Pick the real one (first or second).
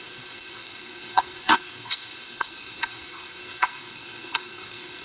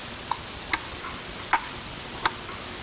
second